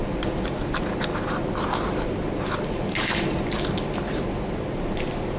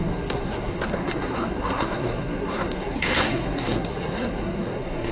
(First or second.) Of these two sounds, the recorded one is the first